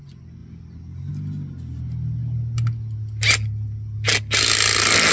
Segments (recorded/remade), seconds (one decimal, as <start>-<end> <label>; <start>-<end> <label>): 0.0-5.1 recorded